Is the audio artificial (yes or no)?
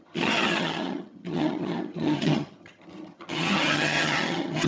yes